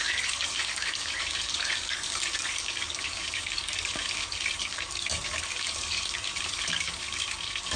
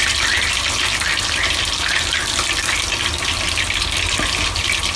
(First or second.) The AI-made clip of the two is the first